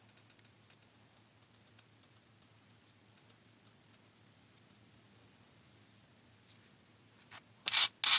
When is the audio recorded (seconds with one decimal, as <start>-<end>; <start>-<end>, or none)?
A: 0.0-8.2